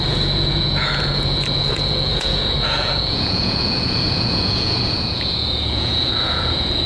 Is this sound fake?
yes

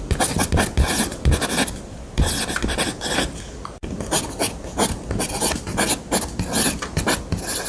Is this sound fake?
no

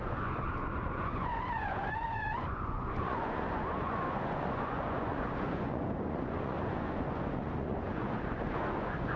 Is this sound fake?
yes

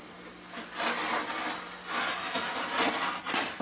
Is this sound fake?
no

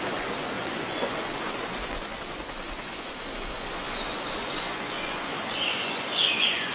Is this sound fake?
yes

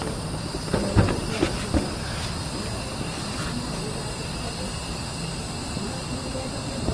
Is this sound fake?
no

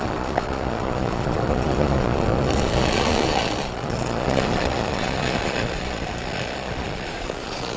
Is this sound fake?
yes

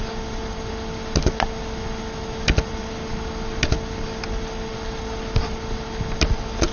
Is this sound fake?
no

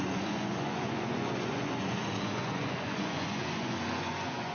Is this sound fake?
yes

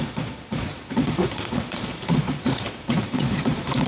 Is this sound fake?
yes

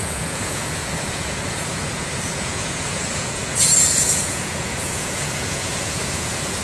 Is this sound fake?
yes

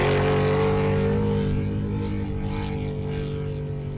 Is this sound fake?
no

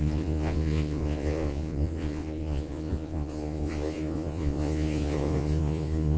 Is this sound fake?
yes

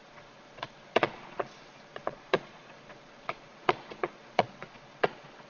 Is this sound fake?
yes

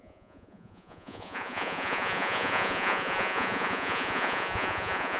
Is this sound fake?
yes